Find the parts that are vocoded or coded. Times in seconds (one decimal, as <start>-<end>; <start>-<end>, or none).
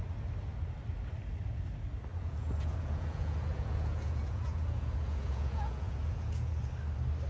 2.1-6.5